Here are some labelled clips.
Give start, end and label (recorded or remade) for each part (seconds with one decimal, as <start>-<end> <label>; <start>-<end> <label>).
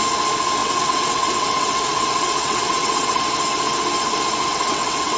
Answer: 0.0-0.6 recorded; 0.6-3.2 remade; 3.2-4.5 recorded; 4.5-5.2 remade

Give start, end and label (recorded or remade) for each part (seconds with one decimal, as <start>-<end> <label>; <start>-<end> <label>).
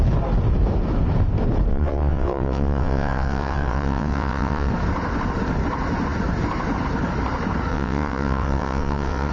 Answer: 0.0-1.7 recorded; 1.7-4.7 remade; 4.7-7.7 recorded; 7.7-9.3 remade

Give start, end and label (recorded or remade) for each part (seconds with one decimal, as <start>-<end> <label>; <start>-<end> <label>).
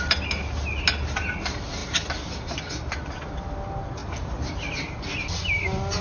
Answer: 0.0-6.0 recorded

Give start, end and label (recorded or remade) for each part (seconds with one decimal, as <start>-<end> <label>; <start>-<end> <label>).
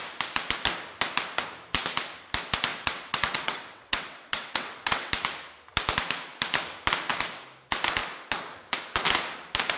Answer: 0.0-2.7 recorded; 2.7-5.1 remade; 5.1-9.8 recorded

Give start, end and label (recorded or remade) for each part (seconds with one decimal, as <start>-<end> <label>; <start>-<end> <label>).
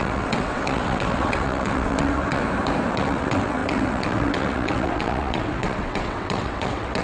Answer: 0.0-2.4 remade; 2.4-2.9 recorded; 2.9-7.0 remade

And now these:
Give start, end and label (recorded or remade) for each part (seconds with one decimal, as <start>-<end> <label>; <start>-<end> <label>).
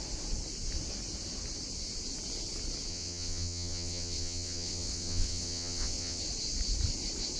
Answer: 0.0-2.9 recorded; 2.9-6.2 remade; 6.2-7.4 recorded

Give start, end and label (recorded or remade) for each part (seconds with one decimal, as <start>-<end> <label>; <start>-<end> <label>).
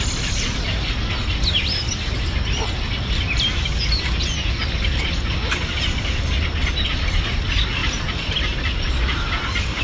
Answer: 0.0-9.8 recorded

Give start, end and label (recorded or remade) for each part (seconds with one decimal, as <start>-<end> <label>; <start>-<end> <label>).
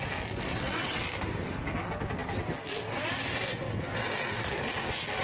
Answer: 0.0-0.5 recorded; 0.5-1.0 remade; 1.0-5.2 recorded